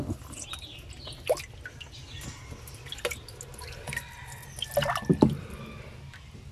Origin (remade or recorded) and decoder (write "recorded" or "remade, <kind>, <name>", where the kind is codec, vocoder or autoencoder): recorded